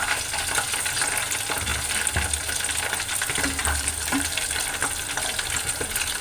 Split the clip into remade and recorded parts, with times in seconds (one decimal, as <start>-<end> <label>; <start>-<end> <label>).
0.0-3.6 recorded; 3.6-4.6 remade; 4.6-6.2 recorded